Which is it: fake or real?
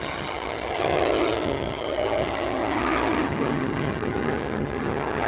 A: fake